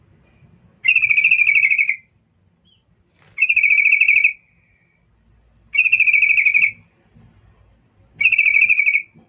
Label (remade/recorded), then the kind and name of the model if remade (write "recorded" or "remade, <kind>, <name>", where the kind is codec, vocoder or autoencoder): recorded